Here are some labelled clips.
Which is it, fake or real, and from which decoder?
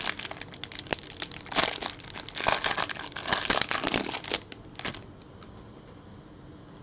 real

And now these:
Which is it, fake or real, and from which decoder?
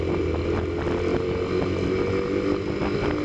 real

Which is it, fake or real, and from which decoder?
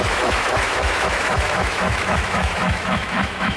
fake, autoencoder, DAC-VAE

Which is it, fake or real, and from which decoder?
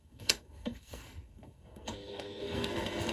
fake, codec, SNAC